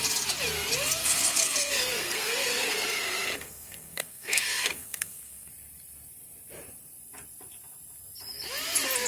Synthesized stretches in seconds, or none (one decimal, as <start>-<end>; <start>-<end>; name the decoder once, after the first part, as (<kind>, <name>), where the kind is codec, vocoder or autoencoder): 1.0-5.5 (codec, SNAC)